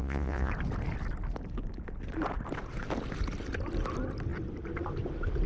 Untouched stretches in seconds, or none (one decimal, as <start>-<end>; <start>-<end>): 0.5-5.5